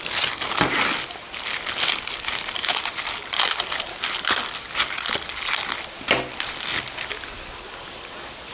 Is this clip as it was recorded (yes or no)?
yes